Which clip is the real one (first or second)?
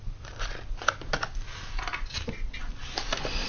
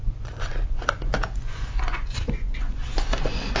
first